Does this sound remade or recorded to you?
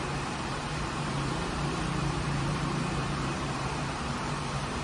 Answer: remade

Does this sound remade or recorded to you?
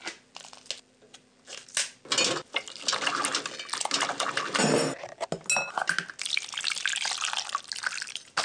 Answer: recorded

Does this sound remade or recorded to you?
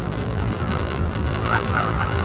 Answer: remade